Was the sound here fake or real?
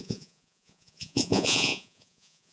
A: fake